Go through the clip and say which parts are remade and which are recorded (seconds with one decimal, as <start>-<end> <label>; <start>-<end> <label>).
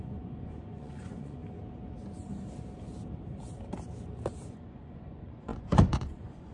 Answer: 0.0-1.4 remade; 1.4-4.5 recorded; 4.5-6.5 remade